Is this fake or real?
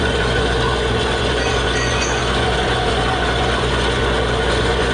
fake